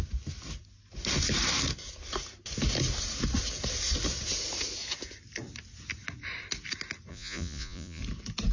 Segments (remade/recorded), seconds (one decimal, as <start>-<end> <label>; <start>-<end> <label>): 0.0-7.1 recorded; 7.1-8.0 remade; 8.0-8.5 recorded